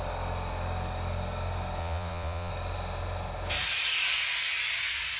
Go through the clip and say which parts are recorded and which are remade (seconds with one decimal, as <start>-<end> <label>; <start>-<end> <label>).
0.0-1.8 recorded; 1.8-2.5 remade; 2.5-5.2 recorded